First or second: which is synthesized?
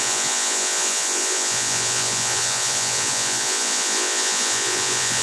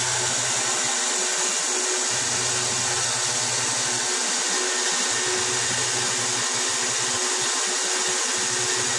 first